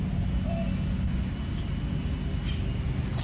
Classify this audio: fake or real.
real